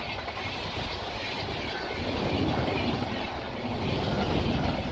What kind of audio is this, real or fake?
real